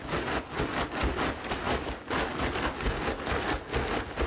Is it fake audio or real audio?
real